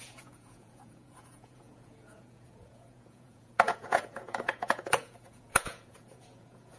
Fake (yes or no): yes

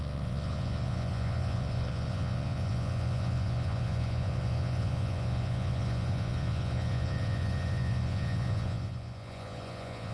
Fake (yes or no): yes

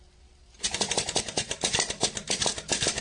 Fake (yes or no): no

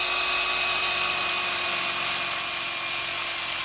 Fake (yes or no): no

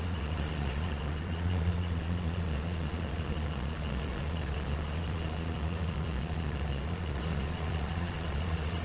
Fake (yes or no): yes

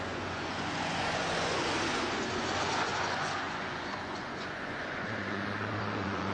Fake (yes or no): yes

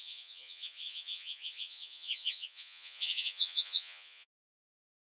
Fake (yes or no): yes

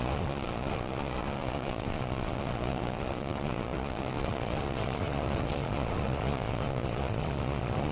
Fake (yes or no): yes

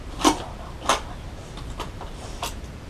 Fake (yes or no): no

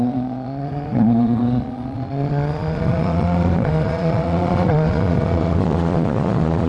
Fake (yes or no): yes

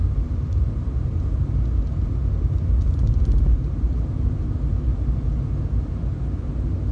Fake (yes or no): no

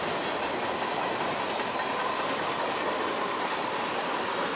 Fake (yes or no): no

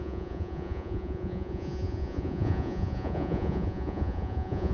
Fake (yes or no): yes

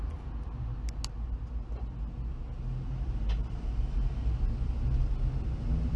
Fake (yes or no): no